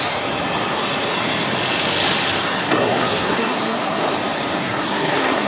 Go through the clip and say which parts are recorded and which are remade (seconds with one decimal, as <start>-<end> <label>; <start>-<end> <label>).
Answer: 0.0-2.6 recorded; 2.6-4.0 remade; 4.0-4.6 recorded; 4.6-5.5 remade